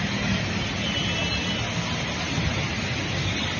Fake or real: real